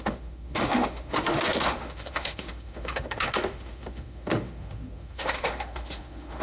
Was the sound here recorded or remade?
remade